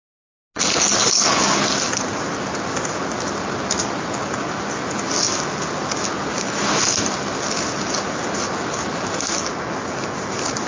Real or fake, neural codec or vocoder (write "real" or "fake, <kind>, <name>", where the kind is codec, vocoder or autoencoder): real